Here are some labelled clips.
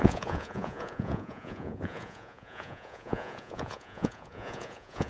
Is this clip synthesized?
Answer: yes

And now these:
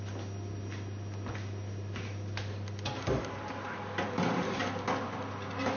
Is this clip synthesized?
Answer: no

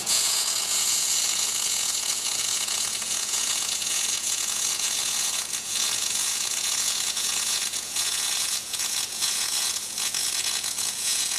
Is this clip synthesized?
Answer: yes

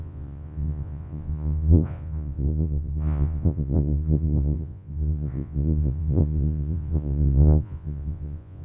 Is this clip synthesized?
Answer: yes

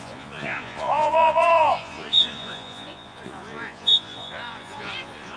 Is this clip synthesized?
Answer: yes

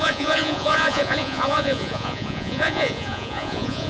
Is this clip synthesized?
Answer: yes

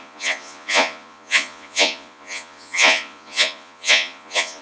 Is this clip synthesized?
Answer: yes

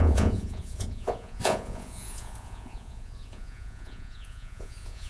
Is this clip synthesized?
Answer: yes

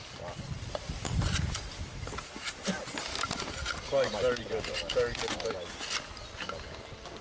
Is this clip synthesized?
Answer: no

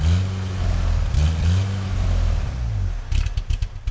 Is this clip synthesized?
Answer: no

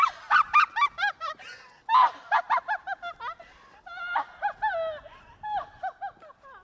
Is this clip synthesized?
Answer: no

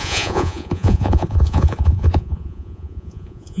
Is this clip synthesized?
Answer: yes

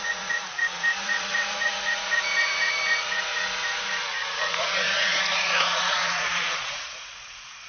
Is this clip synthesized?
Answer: yes